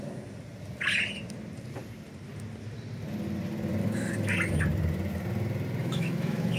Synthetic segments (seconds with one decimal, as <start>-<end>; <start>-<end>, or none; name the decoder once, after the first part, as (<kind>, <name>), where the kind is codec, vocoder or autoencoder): 5.8-6.6 (autoencoder, DAC-VAE)